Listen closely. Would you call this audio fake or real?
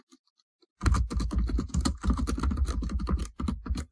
real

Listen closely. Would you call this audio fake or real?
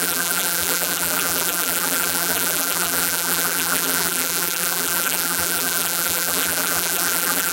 fake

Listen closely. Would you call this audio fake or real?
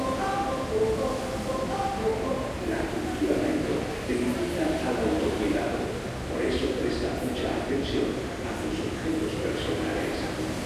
real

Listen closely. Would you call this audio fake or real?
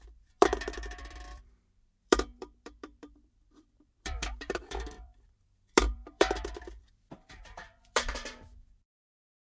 fake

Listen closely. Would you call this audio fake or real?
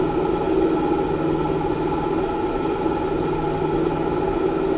real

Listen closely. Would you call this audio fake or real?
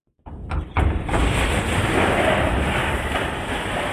real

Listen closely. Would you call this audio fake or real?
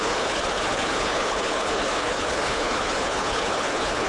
fake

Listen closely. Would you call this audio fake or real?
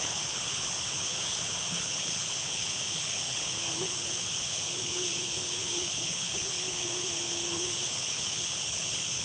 fake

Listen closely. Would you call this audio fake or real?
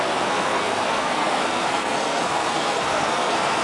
fake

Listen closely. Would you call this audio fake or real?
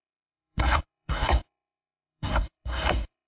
fake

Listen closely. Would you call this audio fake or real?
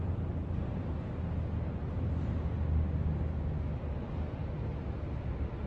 real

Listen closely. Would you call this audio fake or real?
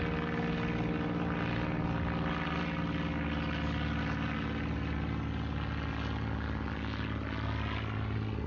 real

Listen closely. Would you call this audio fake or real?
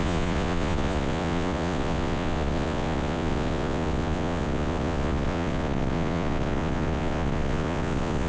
fake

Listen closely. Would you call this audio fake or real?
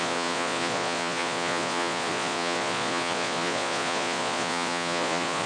fake